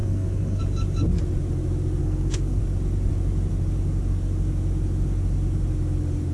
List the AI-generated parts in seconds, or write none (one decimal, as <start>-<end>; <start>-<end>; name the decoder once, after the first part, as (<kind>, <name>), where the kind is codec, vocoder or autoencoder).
0.0-0.6 (codec, SNAC); 2.0-2.6